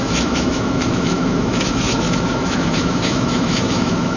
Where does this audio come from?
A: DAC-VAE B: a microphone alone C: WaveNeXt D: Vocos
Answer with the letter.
A